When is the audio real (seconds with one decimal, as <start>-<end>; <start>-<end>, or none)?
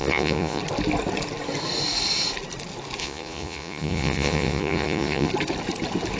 0.6-3.0; 5.3-6.2